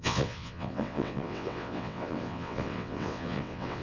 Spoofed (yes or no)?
yes